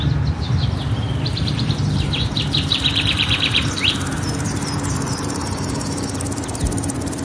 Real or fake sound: fake